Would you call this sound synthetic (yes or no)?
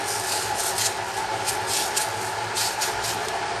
no